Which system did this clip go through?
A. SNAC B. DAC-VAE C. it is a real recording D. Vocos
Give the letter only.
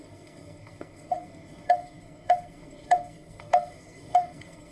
A